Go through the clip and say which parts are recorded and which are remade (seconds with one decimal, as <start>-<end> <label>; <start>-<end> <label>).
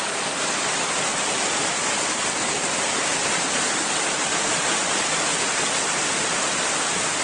0.0-7.2 recorded